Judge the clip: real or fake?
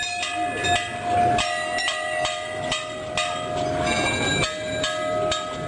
real